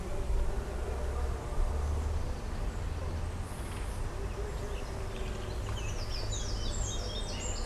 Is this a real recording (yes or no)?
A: yes